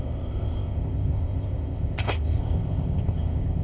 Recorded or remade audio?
remade